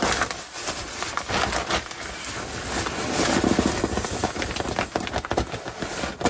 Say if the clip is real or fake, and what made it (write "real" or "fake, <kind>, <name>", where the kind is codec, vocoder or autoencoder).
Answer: real